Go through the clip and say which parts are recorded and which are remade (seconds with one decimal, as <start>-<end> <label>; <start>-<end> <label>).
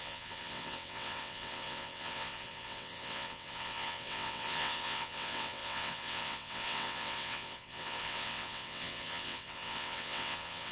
0.0-10.7 remade